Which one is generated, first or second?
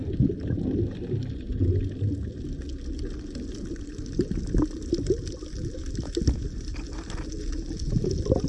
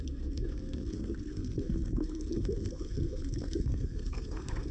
second